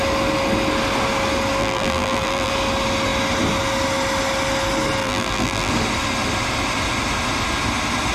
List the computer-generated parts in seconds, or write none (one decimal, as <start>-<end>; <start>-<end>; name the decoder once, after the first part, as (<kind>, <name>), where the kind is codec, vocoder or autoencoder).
1.6-2.5 (vocoder, BigVGAN v2); 5.0-5.7